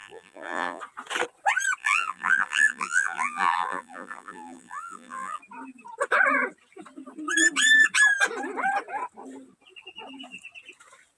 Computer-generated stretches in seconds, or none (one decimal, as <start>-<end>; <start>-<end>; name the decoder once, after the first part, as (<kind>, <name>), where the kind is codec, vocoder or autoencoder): 0.0-0.8 (vocoder, BigVGAN v2); 1.8-5.4

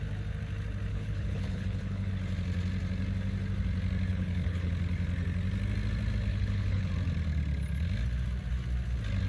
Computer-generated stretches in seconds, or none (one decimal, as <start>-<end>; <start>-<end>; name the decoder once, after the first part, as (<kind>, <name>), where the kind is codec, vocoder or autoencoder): 0.9-2.1 (codec, HILCodec); 4.1-4.7; 6.3-6.9

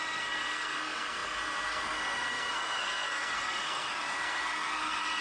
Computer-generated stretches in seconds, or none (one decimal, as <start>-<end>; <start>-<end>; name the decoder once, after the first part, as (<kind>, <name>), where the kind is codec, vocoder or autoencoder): 0.0-5.2 (codec, SNAC)